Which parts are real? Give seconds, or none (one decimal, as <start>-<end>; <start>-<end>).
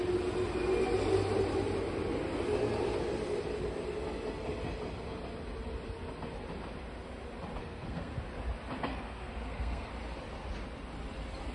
0.0-7.6; 8.1-8.9; 9.9-11.5